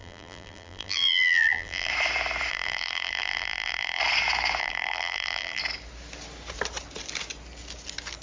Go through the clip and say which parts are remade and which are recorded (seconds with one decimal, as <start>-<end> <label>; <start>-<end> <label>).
0.0-1.9 remade; 1.9-2.5 recorded; 2.5-4.0 remade; 4.0-4.6 recorded; 4.6-5.6 remade; 5.6-8.2 recorded